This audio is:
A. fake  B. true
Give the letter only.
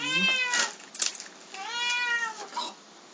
B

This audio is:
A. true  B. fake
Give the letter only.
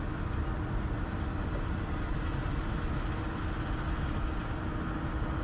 A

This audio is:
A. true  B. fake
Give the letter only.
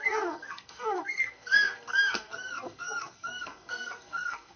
B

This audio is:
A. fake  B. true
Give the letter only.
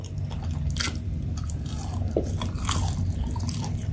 B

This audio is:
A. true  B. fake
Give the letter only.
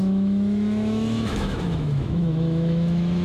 B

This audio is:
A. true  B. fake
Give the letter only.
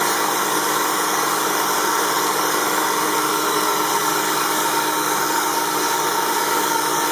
B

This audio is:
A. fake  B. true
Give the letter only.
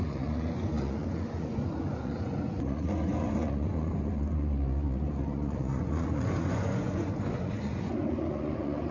A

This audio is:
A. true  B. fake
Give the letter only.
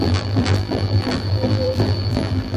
B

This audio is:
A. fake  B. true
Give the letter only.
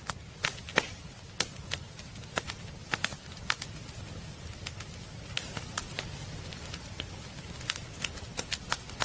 B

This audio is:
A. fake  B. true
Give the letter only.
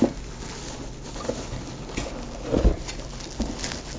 B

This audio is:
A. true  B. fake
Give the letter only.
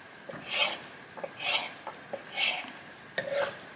A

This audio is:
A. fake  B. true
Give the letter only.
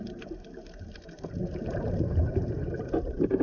A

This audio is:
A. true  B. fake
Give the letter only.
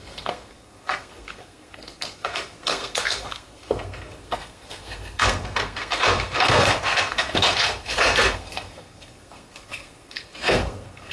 B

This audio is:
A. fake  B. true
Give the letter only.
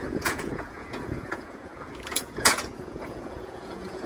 A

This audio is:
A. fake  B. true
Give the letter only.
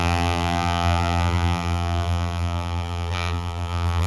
A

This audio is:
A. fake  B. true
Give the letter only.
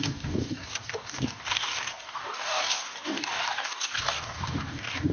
A